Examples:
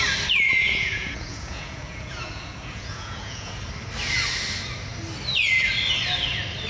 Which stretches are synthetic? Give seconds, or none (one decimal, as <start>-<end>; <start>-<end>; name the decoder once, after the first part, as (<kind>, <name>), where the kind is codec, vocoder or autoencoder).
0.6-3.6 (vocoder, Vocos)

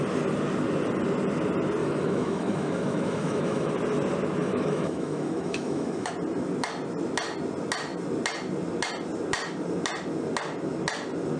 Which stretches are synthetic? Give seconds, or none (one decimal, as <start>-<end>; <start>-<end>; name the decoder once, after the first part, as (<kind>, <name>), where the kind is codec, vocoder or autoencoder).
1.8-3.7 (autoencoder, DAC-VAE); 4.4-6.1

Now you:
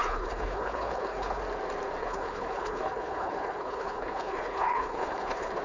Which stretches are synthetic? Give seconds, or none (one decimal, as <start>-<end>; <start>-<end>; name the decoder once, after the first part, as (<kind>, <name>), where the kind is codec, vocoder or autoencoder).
0.0-1.4 (codec, HILCodec); 2.0-5.6